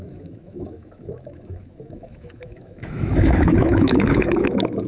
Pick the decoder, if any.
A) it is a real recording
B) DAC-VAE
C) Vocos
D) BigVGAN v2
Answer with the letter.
B